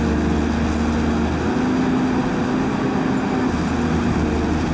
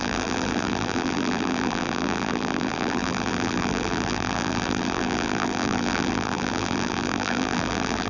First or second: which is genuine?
first